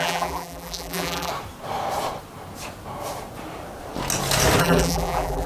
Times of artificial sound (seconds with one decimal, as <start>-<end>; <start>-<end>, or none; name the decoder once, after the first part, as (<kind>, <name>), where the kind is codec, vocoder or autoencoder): 0.0-1.3 (vocoder, BigVGAN v2); 4.6-5.5